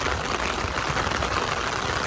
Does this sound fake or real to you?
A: real